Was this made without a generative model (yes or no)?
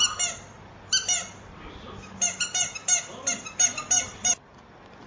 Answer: yes